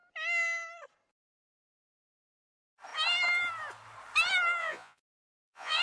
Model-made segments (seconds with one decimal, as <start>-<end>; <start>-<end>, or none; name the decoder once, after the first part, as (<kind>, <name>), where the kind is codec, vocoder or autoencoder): 4.6-5.8 (vocoder, Vocos)